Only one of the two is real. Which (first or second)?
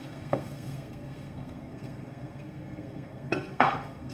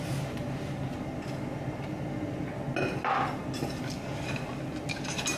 second